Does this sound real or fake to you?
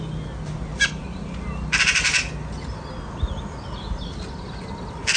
real